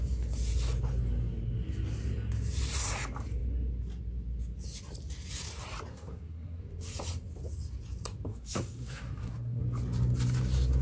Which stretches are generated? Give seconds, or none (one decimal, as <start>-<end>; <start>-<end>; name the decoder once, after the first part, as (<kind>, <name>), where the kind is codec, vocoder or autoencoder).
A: 5.9-6.6 (codec, SNAC); 8.3-9.6

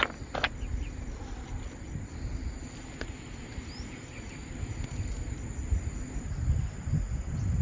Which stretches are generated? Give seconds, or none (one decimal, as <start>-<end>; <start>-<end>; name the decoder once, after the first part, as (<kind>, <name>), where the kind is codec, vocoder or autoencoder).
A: none